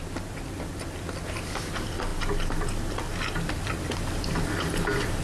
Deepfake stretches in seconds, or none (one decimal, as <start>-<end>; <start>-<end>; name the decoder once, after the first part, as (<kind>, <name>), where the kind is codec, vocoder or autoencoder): none